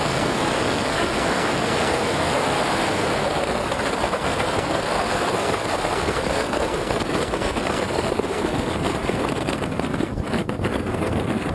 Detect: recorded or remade remade